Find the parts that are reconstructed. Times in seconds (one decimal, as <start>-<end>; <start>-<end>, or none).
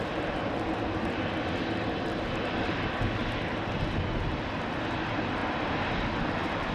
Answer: 0.0-3.2; 4.9-5.4; 6.2-6.7